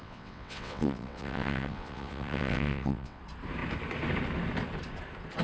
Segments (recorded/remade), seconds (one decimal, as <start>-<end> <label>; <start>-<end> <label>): 0.0-3.2 remade; 3.2-5.4 recorded